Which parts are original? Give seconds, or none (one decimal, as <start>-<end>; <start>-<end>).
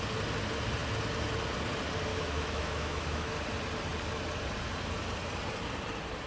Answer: 0.0-2.1; 3.3-6.3